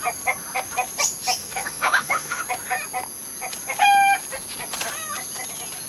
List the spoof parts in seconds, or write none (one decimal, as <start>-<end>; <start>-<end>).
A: 1.4-2.4